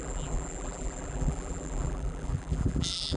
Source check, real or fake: fake